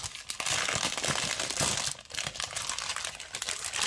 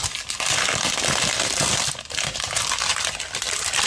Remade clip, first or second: second